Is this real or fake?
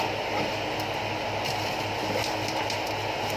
real